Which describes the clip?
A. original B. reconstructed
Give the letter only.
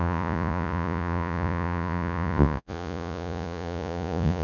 B